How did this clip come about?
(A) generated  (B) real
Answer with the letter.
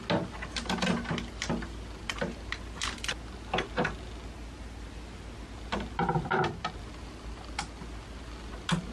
B